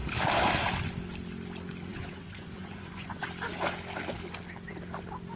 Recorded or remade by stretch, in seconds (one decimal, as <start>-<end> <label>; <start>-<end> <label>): 0.0-1.9 recorded; 1.9-3.2 remade; 3.2-5.4 recorded